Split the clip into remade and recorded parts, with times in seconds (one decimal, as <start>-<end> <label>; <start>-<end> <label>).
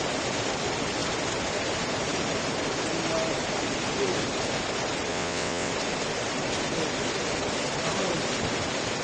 0.0-5.1 recorded; 5.1-5.7 remade; 5.7-9.0 recorded